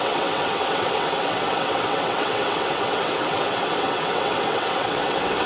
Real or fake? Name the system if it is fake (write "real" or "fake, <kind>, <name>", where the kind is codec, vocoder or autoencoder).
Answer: fake, vocoder, WaveNeXt